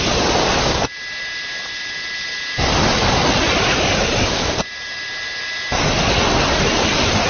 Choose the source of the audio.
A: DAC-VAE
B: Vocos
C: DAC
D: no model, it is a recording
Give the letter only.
D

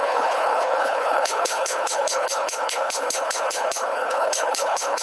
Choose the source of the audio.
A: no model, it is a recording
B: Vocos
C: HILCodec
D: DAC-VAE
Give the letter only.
C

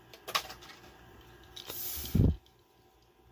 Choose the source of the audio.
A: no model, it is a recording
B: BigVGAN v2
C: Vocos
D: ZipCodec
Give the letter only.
A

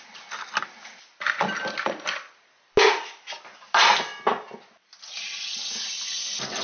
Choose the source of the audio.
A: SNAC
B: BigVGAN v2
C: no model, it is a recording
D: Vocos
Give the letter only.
C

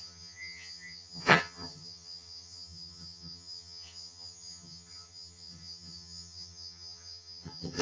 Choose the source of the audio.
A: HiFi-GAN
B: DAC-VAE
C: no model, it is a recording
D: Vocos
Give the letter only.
A